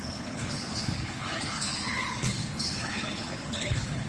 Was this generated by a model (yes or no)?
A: yes